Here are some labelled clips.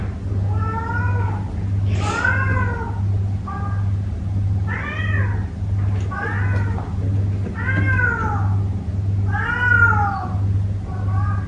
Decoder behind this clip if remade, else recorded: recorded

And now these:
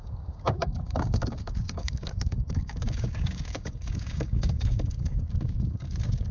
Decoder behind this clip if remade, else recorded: remade, codec, DAC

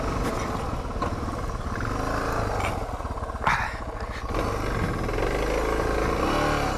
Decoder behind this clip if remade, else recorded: recorded